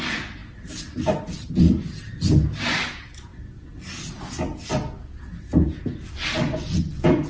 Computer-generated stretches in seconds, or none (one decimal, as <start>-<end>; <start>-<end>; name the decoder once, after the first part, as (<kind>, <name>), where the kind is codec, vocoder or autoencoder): none